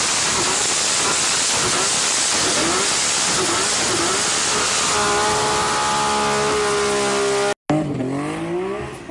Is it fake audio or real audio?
real